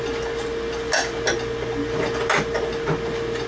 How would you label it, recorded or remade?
recorded